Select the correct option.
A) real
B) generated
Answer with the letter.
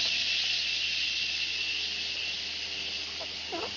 A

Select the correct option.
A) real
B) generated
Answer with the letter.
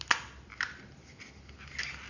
A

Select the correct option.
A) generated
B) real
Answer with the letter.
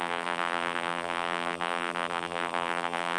A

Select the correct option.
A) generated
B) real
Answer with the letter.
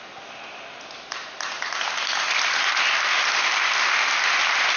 B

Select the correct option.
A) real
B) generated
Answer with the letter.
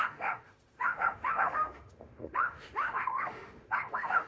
B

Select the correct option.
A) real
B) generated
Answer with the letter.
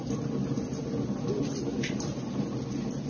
A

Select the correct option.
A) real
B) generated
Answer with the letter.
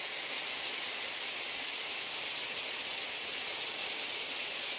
B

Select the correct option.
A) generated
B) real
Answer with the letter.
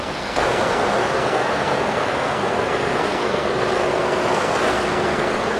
A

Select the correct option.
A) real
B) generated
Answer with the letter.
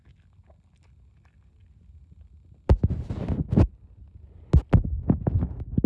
A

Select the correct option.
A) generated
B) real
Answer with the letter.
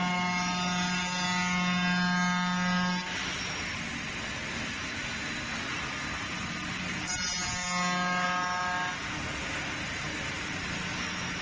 B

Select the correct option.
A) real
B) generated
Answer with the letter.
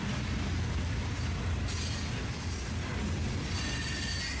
A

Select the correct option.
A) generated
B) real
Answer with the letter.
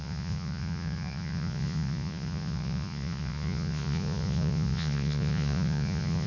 A